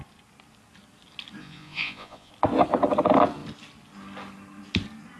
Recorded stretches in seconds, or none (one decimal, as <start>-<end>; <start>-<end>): 0.0-1.4; 2.3-5.2